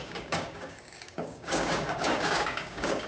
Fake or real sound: fake